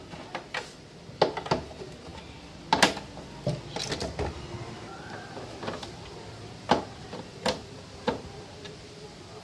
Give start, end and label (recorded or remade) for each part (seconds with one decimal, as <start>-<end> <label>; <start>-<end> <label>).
0.0-9.4 recorded